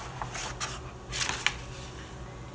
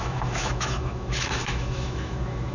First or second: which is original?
first